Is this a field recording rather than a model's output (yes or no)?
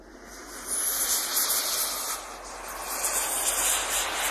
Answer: yes